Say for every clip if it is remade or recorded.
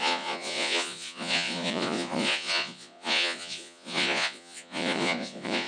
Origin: remade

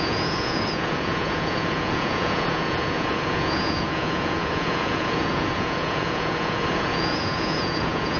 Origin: remade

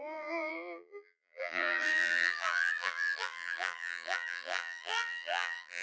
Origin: remade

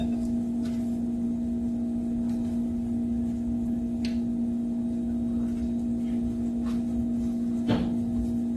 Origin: recorded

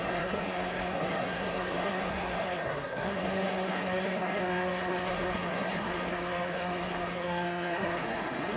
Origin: remade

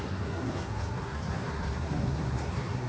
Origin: remade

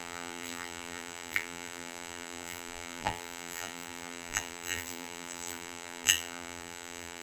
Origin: remade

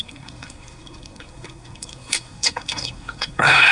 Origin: remade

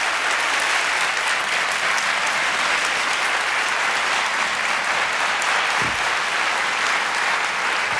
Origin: recorded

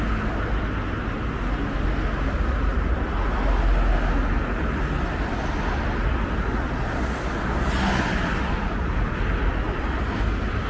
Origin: recorded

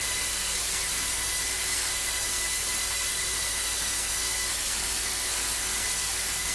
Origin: remade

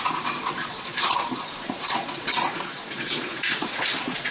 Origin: remade